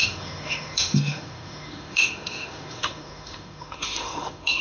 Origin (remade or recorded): remade